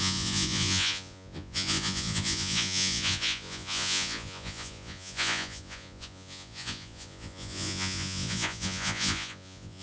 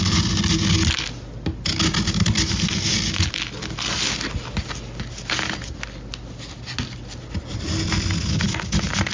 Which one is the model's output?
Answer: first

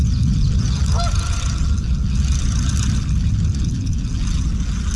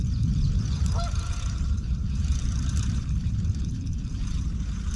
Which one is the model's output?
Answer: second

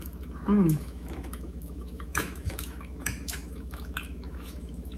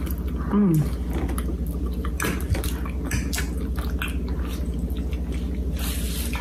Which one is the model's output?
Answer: first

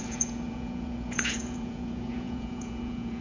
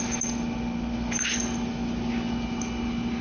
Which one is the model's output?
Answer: first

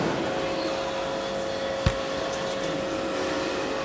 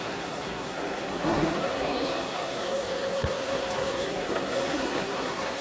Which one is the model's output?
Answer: second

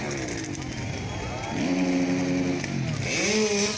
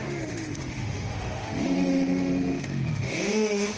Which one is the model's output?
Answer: second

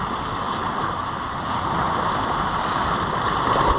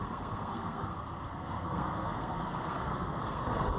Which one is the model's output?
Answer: second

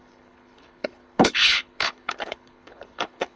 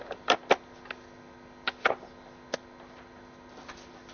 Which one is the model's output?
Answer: first